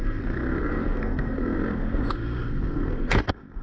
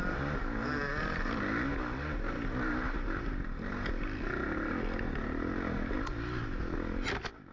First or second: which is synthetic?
first